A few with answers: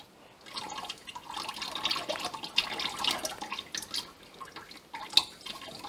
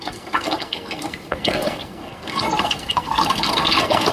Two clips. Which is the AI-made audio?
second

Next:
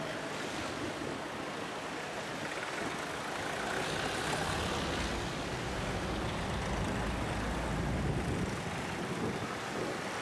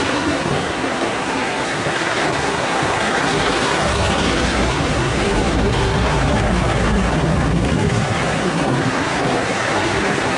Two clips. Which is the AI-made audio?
second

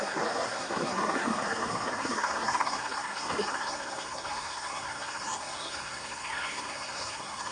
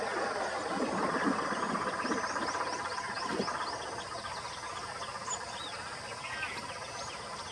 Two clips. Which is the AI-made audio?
first